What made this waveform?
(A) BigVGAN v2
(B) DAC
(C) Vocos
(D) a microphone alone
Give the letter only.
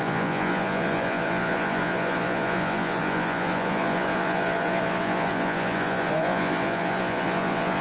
C